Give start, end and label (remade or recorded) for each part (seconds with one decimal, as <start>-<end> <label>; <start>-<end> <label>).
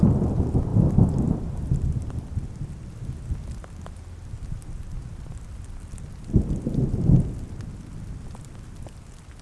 0.0-9.4 recorded